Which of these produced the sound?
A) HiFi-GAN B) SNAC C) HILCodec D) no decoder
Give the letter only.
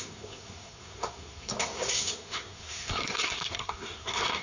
B